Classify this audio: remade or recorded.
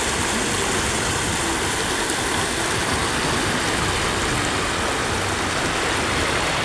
recorded